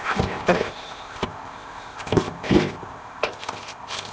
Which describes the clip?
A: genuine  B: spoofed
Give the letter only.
B